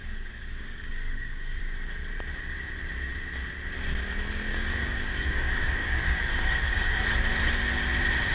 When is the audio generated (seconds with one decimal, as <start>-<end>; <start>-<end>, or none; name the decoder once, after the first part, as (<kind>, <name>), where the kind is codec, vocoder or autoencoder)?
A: 0.0-1.6 (codec, DAC); 4.5-7.0